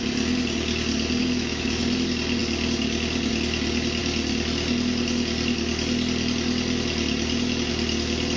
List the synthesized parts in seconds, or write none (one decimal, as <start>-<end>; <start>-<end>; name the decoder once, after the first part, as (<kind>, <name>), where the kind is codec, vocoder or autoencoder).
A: 1.2-1.8 (autoencoder, DAC-VAE)